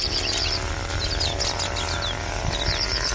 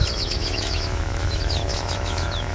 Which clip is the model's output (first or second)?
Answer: second